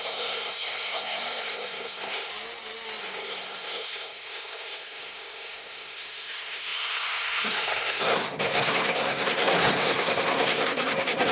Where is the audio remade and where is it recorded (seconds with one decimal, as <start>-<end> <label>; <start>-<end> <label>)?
0.0-2.3 remade; 2.3-3.0 recorded; 3.0-11.3 remade